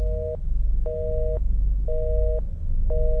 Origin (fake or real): real